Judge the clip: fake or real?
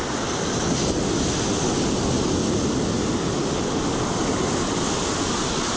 real